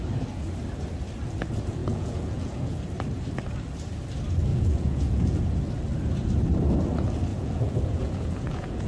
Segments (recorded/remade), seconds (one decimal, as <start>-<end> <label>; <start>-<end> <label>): 0.0-1.8 recorded; 1.8-2.8 remade; 2.8-4.5 recorded; 4.5-5.4 remade; 5.4-7.3 recorded; 7.3-8.9 remade